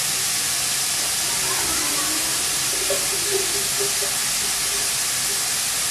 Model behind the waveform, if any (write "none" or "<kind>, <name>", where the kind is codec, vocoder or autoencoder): none